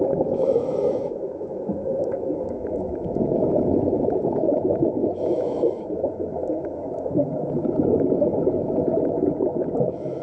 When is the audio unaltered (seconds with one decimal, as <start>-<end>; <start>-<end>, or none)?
none